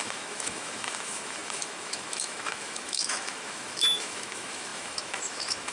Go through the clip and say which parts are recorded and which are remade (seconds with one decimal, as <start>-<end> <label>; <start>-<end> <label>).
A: 0.0-5.7 remade